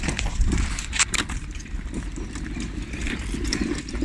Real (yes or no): no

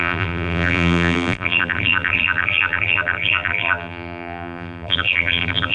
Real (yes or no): no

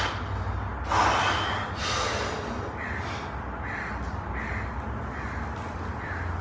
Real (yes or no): yes